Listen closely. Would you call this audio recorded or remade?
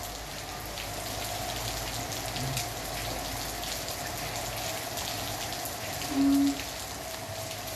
recorded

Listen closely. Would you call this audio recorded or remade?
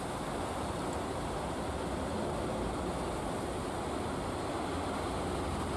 recorded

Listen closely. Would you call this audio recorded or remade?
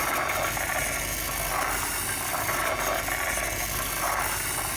recorded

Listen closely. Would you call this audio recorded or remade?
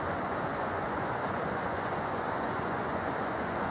remade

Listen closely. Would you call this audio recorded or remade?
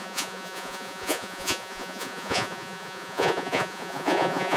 remade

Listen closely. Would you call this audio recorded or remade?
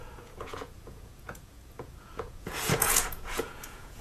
remade